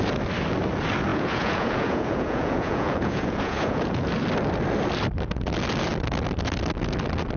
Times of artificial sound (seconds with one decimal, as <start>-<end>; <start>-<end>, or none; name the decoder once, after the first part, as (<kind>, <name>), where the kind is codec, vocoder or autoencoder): 1.1-4.1 (vocoder, Vocos)